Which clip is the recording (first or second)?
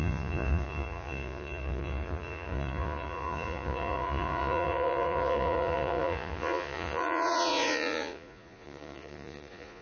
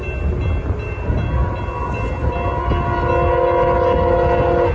second